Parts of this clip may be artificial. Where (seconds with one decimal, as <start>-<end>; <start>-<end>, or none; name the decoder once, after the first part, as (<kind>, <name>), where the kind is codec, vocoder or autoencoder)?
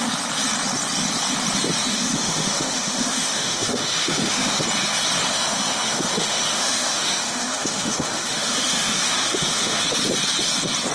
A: 1.9-4.6 (autoencoder, DAC-VAE); 5.3-9.8